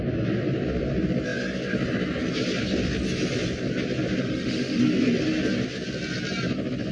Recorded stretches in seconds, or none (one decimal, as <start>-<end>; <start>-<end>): 0.0-4.2; 4.8-6.9